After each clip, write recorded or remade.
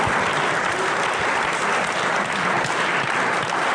remade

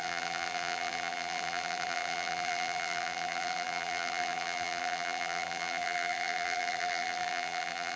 remade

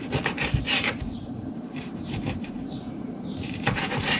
remade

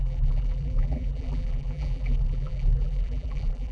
remade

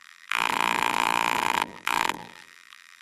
remade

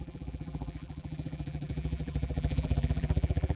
remade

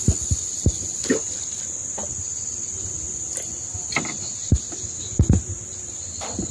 recorded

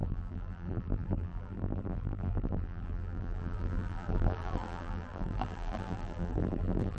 remade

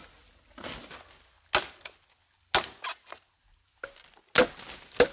recorded